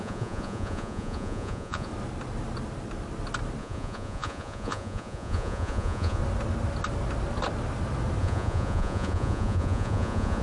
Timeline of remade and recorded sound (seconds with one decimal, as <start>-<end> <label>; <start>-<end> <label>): 0.0-1.9 remade; 1.9-3.6 recorded; 3.6-6.2 remade; 6.2-8.2 recorded; 8.2-10.4 remade